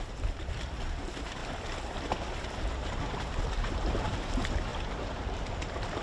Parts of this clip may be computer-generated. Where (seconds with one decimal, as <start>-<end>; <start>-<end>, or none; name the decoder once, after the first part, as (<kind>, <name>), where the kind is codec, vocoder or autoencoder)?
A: 0.0-1.4 (vocoder, BigVGAN v2); 3.4-6.0

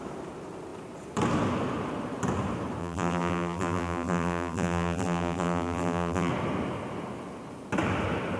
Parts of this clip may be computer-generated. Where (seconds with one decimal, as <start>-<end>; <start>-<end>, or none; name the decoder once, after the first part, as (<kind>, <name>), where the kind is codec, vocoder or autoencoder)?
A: 2.8-6.3 (vocoder, BigVGAN v2)

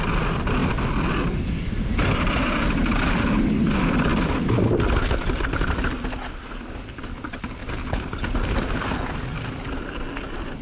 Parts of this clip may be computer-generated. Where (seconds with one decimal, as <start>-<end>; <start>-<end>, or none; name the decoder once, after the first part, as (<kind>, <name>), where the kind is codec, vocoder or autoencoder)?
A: 4.1-6.7 (vocoder, BigVGAN v2); 7.6-8.7

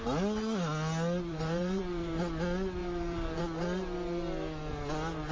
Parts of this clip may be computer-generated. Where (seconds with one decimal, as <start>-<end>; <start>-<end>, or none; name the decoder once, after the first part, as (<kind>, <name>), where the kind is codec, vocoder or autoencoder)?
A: 1.3-2.2 (vocoder, BigVGAN v2); 2.8-3.4

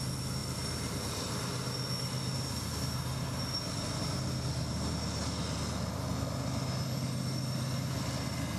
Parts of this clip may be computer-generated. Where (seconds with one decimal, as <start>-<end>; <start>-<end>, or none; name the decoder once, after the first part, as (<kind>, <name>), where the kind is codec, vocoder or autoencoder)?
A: none